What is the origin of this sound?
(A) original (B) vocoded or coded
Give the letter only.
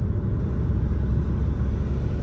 A